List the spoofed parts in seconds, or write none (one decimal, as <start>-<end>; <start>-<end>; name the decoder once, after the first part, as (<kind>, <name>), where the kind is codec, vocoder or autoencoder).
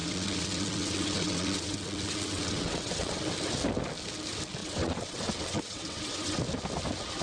0.0-3.2 (vocoder, WaveNeXt); 4.6-6.4